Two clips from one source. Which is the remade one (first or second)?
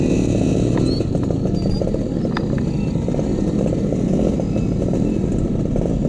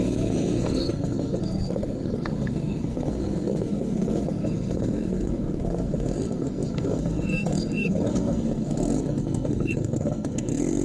second